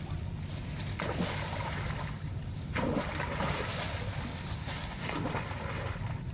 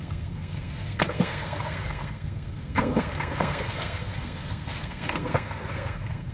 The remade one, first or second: second